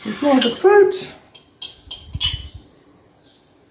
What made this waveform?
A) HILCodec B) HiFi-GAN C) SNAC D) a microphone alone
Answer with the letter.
D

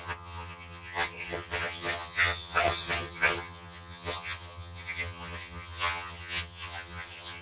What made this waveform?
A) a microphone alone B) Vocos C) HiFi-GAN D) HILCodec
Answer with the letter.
C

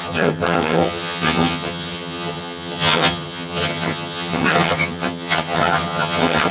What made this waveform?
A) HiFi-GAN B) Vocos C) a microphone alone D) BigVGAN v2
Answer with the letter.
A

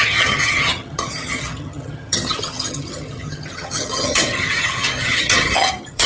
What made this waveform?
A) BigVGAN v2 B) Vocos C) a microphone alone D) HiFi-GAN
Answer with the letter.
D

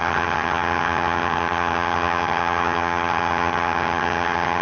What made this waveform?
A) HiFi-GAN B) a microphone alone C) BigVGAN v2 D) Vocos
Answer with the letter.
A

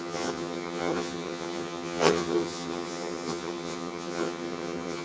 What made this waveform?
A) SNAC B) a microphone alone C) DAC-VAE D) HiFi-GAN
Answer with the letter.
D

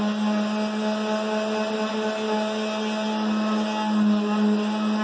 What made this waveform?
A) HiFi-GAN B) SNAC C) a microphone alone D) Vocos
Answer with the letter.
C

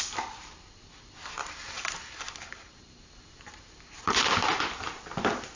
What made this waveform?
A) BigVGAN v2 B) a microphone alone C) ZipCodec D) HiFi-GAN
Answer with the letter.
B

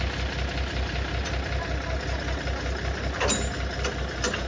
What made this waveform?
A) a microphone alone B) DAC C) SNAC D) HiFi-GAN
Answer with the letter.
A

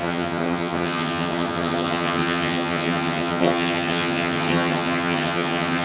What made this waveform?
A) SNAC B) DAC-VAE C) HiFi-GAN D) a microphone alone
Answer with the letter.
C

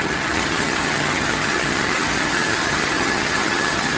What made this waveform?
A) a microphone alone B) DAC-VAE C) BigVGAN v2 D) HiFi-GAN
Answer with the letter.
D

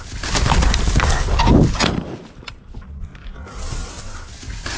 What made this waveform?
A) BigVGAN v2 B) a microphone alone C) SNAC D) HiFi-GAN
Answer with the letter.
B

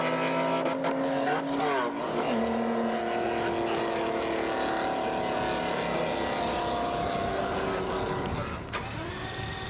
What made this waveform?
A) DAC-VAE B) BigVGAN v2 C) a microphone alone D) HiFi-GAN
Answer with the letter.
C